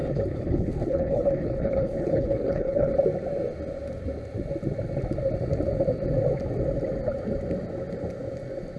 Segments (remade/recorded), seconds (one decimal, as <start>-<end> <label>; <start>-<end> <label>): 0.0-2.9 remade; 2.9-8.8 recorded